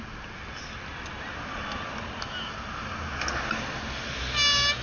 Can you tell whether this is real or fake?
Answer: real